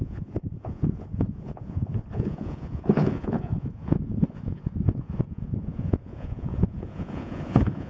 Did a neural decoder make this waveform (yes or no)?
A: yes